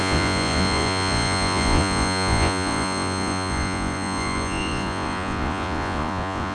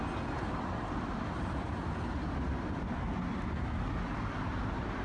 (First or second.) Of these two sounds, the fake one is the first